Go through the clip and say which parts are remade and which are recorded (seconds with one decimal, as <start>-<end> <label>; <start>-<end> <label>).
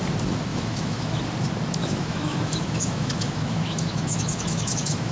0.0-0.5 recorded; 0.5-1.2 remade; 1.2-1.8 recorded; 1.8-5.1 remade